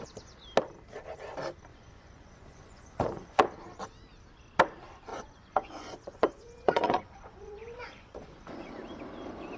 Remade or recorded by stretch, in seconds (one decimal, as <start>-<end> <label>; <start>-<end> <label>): 0.0-1.7 recorded; 1.7-3.4 remade; 3.4-5.1 recorded; 5.1-8.7 remade; 8.7-9.6 recorded

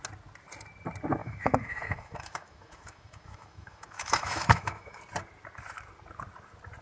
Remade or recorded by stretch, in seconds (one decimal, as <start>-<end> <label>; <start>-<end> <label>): 0.0-1.2 recorded; 1.2-5.0 remade; 5.0-6.8 recorded

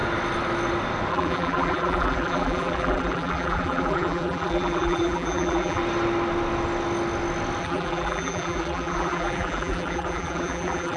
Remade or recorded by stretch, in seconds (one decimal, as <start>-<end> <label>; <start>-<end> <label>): 0.0-1.1 recorded; 1.1-5.8 remade; 5.8-7.6 recorded; 7.6-11.0 remade

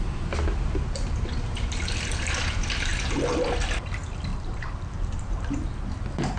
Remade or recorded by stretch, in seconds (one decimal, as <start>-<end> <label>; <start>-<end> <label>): 0.0-4.3 recorded; 4.3-5.3 remade; 5.3-6.4 recorded

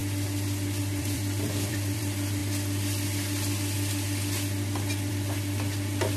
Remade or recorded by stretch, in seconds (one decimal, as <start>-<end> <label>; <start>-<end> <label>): 0.0-1.0 recorded; 1.0-2.4 remade; 2.4-5.1 recorded; 5.1-6.2 remade